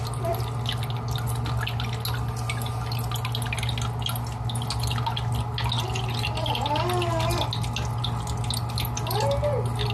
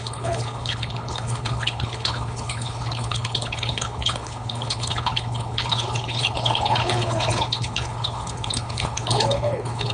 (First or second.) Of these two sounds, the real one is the first